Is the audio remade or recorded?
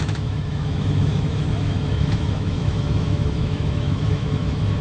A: remade